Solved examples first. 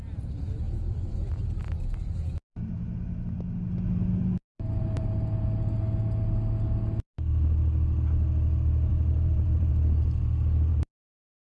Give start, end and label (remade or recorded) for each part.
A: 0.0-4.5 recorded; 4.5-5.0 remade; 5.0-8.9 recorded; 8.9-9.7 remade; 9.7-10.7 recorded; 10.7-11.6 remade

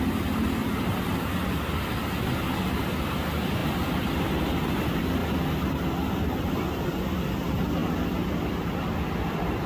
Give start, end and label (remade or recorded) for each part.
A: 0.0-0.6 recorded; 0.6-1.3 remade; 1.3-3.6 recorded; 3.6-4.1 remade; 4.1-7.8 recorded; 7.8-9.7 remade